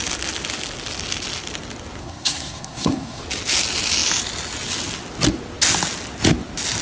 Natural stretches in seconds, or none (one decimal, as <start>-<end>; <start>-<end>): 0.0-2.0; 3.2-6.8